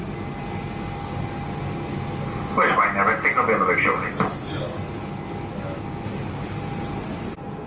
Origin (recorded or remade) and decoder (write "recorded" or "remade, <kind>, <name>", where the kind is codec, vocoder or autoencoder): recorded